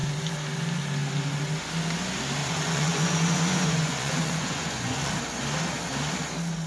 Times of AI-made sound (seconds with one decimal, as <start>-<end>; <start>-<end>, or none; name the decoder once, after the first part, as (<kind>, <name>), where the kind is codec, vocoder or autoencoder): 2.4-5.1 (vocoder, Vocos)